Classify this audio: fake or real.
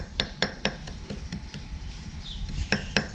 fake